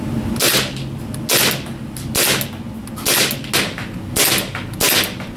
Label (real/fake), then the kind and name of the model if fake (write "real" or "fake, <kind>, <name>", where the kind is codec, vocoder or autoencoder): real